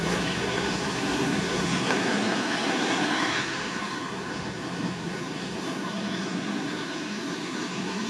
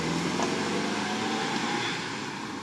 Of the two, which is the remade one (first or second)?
first